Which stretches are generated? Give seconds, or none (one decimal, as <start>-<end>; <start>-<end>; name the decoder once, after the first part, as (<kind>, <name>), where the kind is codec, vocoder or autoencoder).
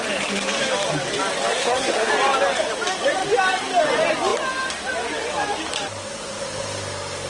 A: 1.5-2.1 (codec, SNAC)